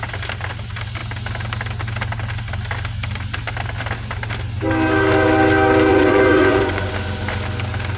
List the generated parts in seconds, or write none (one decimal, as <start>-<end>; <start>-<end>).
5.9-6.9